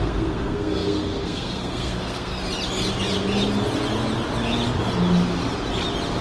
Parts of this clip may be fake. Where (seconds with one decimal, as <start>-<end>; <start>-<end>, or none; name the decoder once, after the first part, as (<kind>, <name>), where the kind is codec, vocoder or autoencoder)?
0.0-2.3 (codec, SNAC)